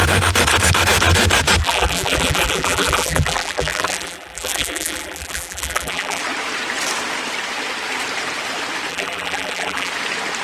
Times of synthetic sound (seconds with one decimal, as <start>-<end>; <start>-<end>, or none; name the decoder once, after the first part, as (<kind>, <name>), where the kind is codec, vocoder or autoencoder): 1.6-6.2 (vocoder, BigVGAN v2); 8.9-9.9